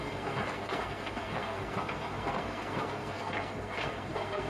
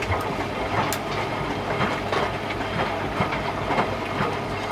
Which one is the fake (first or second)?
first